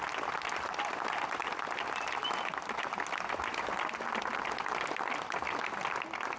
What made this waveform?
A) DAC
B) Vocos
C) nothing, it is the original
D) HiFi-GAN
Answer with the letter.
C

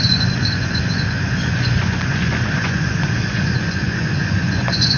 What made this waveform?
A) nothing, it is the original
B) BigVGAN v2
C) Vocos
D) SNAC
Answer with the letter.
C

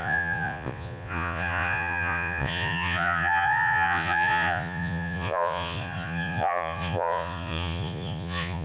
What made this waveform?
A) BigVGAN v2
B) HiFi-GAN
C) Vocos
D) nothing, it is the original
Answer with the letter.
C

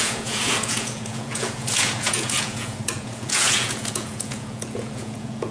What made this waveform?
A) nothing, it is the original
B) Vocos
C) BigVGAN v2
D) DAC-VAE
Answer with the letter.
B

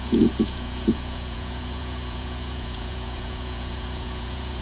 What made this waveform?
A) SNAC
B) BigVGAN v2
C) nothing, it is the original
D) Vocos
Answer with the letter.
D